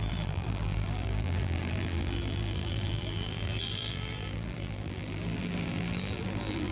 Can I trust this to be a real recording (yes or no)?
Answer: no